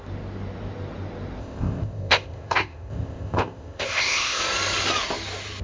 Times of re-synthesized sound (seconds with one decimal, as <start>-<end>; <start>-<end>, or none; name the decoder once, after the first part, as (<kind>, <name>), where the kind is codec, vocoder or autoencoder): 1.4-4.4 (codec, ZipCodec)